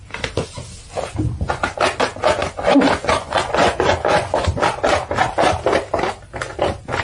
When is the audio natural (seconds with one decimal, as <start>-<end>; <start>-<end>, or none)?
0.0-2.4; 4.6-7.0